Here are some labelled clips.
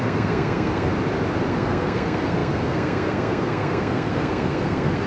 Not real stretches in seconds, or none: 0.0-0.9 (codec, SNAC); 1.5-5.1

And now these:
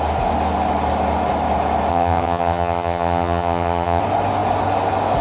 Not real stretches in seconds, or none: 1.9-4.0 (vocoder, HiFi-GAN)

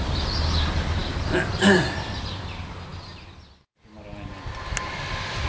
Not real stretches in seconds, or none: 1.0-2.2 (vocoder, BigVGAN v2)

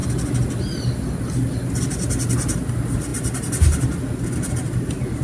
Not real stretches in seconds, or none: none

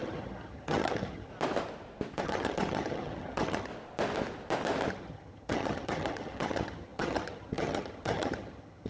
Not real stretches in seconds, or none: 0.0-1.3 (vocoder, HiFi-GAN); 2.2-3.7; 4.9-8.9

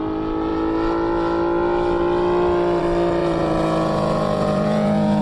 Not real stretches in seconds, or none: 3.2-5.2 (vocoder, Vocos)

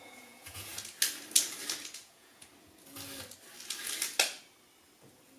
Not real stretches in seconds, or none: 0.0-0.7 (vocoder, Vocos); 2.0-2.5